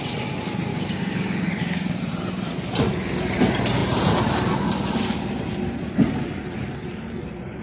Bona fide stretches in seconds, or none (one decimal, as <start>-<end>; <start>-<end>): 0.0-0.7; 2.0-7.6